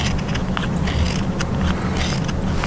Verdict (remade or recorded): recorded